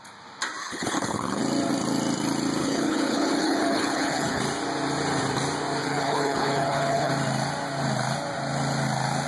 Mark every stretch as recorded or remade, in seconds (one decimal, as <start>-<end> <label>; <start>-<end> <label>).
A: 0.0-0.6 recorded; 0.6-1.4 remade; 1.4-2.6 recorded; 2.6-4.4 remade; 4.4-5.8 recorded; 5.8-7.1 remade; 7.1-9.3 recorded